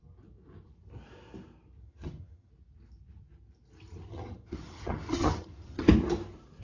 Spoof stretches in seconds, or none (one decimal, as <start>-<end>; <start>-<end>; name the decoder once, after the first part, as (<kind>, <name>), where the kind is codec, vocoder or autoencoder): 1.8-2.5 (vocoder, HiFi-GAN); 4.1-5.9